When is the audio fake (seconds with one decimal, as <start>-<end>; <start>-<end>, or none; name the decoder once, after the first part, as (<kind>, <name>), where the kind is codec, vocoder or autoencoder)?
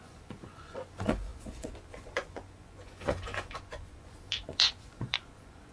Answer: 0.0-5.7 (vocoder, Vocos)